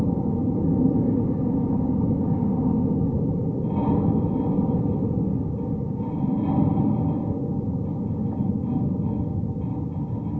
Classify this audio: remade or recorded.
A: recorded